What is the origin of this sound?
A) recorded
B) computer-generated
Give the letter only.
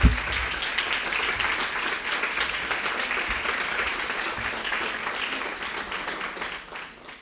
A